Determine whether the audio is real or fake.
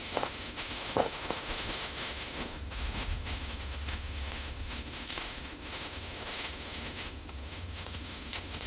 fake